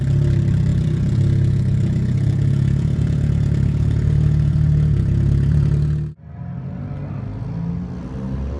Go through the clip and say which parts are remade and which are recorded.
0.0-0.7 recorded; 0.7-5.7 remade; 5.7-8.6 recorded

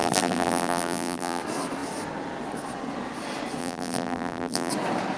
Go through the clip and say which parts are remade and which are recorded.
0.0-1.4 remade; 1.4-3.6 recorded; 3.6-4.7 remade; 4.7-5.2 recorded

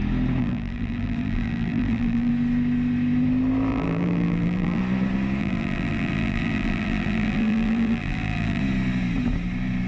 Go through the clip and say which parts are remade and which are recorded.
0.0-0.4 recorded; 0.4-2.3 remade; 2.3-3.7 recorded; 3.7-4.8 remade; 4.8-5.4 recorded; 5.4-8.6 remade; 8.6-9.9 recorded